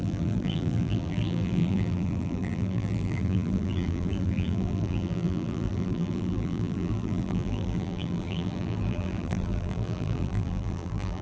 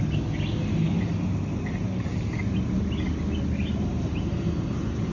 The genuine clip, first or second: second